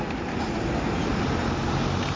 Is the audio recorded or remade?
recorded